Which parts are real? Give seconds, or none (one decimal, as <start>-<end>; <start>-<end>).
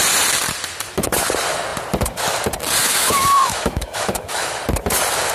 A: 0.0-2.8; 4.6-5.3